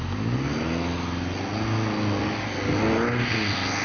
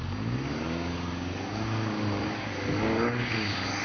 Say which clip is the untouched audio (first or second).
first